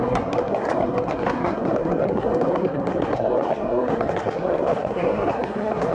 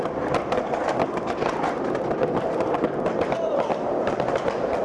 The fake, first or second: first